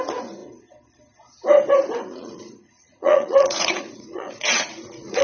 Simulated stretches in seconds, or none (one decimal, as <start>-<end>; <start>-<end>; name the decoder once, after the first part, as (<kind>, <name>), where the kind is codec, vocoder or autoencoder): 2.1-5.2 (vocoder, Vocos)